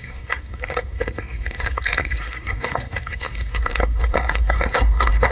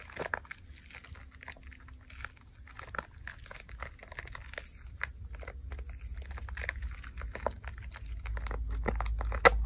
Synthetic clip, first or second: first